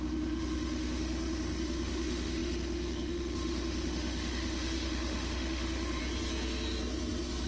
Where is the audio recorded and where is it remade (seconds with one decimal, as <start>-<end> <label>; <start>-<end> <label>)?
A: 0.0-6.0 remade; 6.0-7.5 recorded